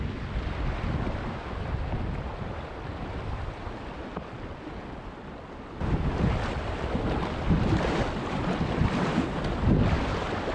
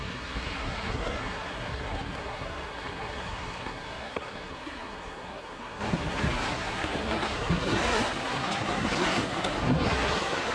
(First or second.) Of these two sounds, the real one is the first